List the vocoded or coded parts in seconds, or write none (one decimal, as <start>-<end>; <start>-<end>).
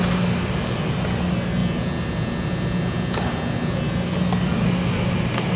none